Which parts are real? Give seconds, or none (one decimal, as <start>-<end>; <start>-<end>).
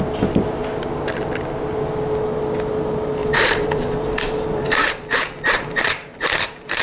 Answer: 0.0-3.2